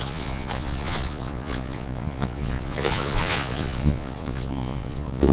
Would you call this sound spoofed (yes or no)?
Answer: yes